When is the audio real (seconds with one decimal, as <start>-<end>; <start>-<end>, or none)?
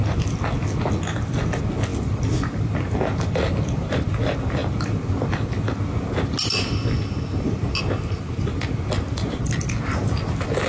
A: 0.0-10.7